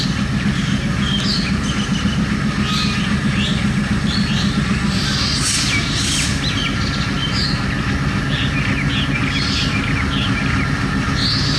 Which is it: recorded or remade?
recorded